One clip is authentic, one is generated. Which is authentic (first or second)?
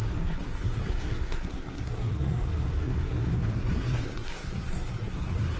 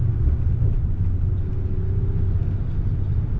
second